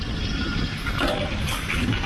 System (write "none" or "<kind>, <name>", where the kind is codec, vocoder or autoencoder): none